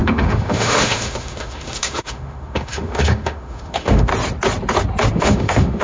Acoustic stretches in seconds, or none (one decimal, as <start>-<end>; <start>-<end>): 4.1-5.1